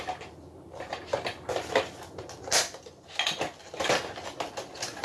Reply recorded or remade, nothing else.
recorded